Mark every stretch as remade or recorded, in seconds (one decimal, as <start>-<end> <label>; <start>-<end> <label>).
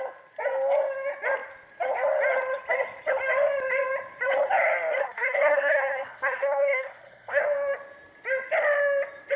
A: 0.0-5.0 recorded; 5.0-7.4 remade; 7.4-9.4 recorded